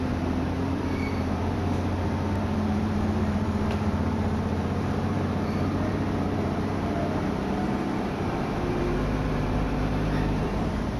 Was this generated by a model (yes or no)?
yes